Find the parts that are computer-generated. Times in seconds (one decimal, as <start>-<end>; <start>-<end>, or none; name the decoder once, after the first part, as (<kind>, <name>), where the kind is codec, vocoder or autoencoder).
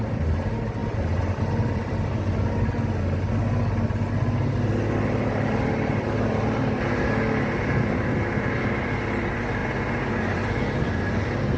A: 0.8-2.8 (vocoder, BigVGAN v2); 9.6-10.6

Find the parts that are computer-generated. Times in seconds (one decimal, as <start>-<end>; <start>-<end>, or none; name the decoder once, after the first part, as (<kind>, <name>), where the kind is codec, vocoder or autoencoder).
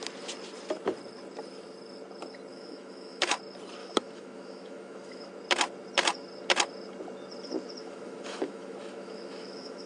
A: 2.5-3.4 (autoencoder, DAC-VAE); 3.8-5.3; 7.8-9.9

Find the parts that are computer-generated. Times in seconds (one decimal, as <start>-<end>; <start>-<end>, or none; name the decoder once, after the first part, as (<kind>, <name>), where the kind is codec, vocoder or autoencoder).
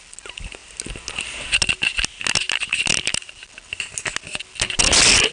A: none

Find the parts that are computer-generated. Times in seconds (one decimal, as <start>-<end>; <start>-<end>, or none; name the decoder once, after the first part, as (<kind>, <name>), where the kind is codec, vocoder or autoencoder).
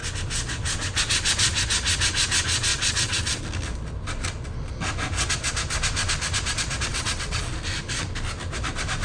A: 2.7-3.4 (vocoder, WaveNeXt); 6.9-7.5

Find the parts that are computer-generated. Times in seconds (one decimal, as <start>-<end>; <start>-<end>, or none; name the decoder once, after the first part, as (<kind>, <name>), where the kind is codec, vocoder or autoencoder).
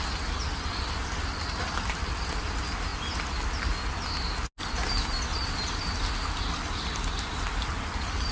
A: none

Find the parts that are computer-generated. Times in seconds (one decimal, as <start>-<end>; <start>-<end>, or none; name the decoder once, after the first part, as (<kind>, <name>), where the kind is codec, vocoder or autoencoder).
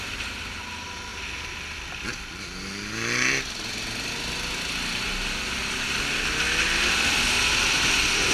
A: none